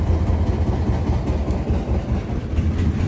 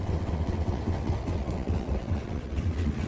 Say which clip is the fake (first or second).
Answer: second